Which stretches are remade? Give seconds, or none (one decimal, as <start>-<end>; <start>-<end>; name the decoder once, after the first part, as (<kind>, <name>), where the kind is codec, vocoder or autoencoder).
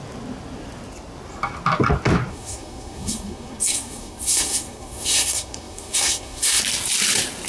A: 2.3-6.6 (codec, SNAC)